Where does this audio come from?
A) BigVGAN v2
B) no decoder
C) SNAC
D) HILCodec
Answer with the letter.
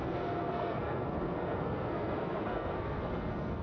C